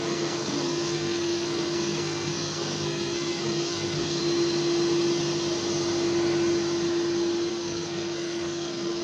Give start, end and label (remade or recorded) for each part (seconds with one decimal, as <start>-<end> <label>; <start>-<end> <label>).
0.0-4.2 remade; 4.2-7.5 recorded; 7.5-9.0 remade